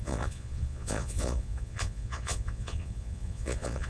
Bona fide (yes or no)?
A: no